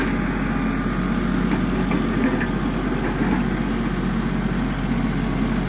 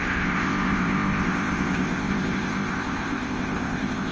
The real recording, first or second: first